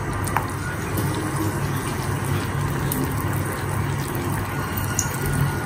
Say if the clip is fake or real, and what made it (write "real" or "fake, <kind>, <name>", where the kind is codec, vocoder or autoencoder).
real